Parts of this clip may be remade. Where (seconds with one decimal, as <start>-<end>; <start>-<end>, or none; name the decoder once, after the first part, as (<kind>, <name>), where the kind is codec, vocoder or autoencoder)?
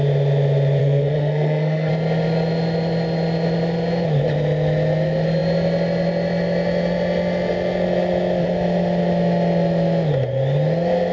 0.8-1.9 (codec, SNAC)